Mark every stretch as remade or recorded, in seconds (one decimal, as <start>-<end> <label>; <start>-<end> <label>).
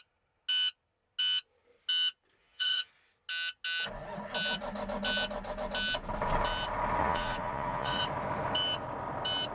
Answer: 0.0-2.4 recorded; 2.4-2.9 remade; 2.9-7.0 recorded; 7.0-8.0 remade; 8.0-9.5 recorded